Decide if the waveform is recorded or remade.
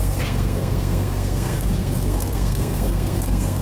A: remade